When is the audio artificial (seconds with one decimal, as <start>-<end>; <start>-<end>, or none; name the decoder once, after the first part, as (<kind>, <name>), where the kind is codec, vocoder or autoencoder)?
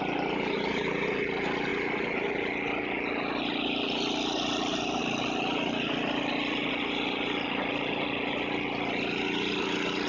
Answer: none